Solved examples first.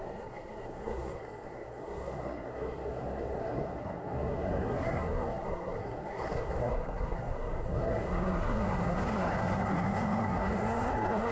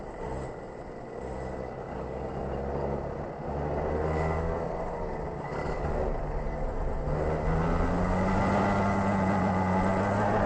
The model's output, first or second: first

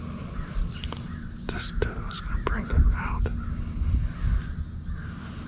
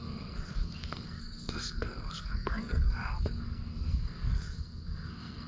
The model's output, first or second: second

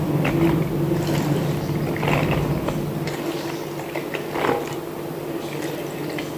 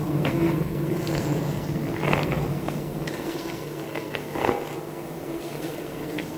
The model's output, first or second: second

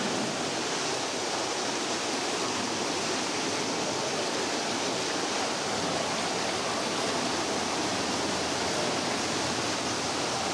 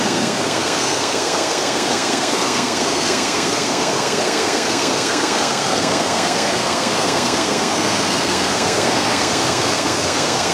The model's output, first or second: second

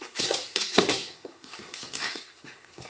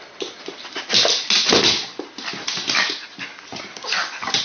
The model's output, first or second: first